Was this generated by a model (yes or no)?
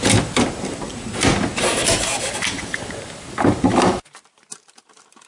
no